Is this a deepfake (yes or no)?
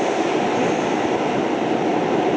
yes